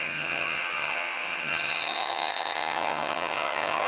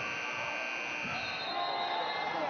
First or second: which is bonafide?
second